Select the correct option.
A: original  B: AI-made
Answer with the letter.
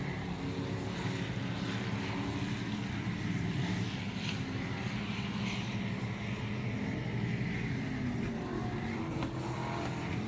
A